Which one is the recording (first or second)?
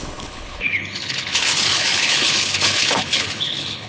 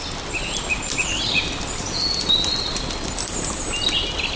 second